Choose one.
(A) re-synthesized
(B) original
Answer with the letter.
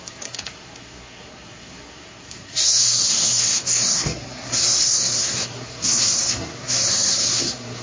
A